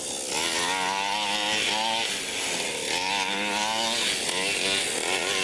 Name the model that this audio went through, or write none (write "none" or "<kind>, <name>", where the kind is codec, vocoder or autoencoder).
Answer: none